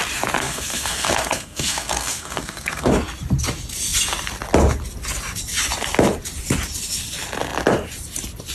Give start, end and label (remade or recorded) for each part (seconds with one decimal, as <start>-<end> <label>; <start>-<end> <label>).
0.0-0.4 recorded; 0.4-2.9 remade; 2.9-8.5 recorded